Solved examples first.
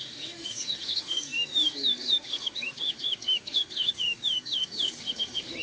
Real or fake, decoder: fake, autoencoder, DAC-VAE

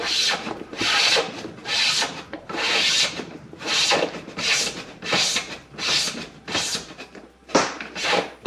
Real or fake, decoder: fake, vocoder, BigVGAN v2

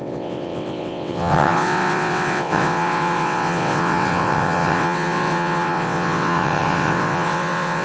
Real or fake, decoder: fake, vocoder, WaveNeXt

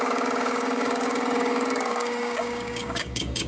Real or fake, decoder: fake, codec, DAC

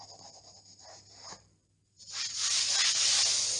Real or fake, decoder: real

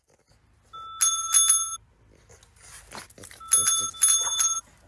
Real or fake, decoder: real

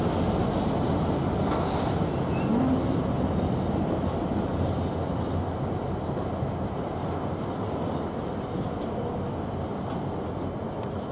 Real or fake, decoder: real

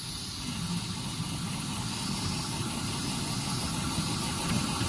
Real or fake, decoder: real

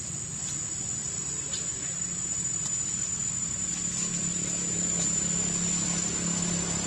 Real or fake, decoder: real